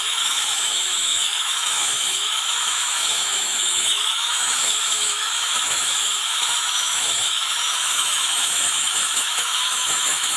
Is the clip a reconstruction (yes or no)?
yes